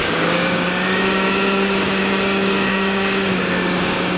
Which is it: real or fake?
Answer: fake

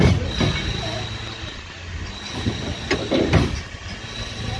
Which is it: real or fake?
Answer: real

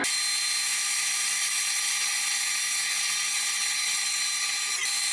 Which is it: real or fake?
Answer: real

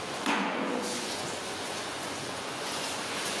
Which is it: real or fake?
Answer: fake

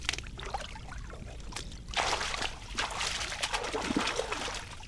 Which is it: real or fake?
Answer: real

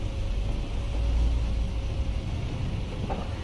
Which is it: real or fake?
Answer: real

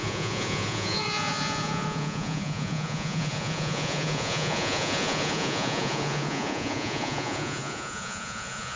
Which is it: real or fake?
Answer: fake